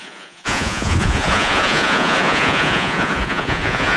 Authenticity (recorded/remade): remade